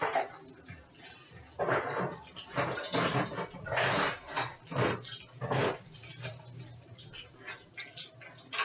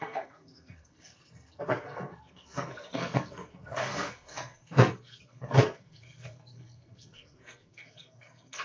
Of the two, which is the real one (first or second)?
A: first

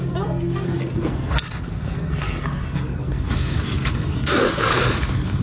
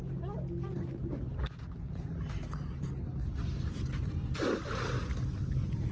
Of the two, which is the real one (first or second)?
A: second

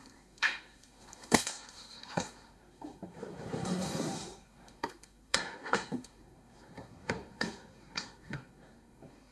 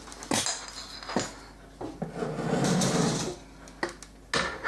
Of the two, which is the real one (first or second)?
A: second